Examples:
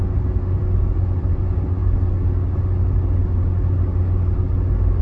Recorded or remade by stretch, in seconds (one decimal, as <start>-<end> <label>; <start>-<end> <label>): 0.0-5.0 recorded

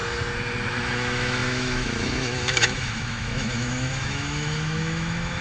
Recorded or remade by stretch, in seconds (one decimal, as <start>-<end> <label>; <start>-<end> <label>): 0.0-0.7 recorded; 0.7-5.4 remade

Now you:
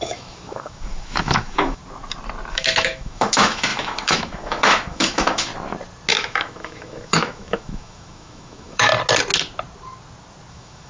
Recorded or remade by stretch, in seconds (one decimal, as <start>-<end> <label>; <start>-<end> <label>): 0.0-1.8 remade; 1.8-2.5 recorded; 2.5-5.5 remade; 5.5-6.1 recorded; 6.1-8.9 remade; 8.9-10.5 recorded; 10.5-10.9 remade